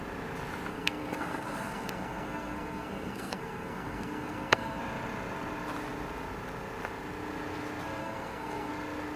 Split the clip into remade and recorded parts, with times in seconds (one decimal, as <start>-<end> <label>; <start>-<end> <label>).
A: 0.0-0.7 recorded; 0.7-4.8 remade; 4.8-8.0 recorded; 8.0-8.7 remade; 8.7-9.2 recorded